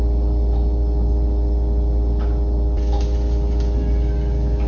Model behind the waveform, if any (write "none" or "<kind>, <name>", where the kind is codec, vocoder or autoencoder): none